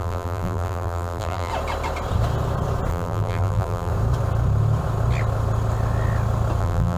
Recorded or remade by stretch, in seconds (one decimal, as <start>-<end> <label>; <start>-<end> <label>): 0.0-1.5 remade; 1.5-2.9 recorded; 2.9-3.9 remade; 3.9-6.6 recorded; 6.6-7.0 remade